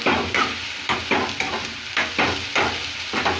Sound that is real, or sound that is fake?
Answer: real